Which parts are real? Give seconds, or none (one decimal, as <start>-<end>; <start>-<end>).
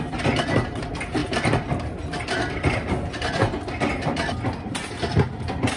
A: 0.0-5.8